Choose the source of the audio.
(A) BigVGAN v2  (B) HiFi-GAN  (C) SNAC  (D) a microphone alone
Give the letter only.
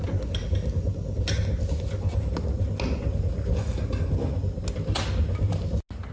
D